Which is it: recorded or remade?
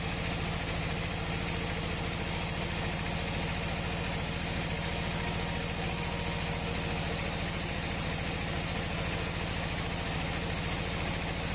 recorded